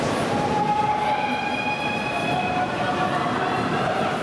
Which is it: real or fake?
real